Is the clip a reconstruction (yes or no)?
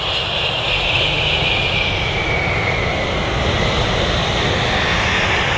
no